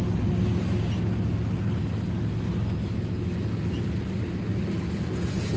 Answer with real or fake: real